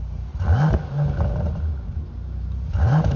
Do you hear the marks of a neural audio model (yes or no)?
yes